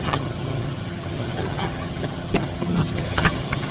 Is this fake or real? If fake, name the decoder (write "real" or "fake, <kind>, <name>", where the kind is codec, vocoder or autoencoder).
fake, vocoder, HiFi-GAN